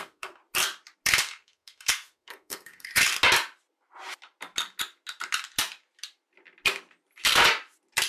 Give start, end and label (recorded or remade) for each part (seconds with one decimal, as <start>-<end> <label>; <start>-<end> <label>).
0.0-0.4 remade; 0.4-1.1 recorded; 1.1-2.9 remade; 2.9-8.1 recorded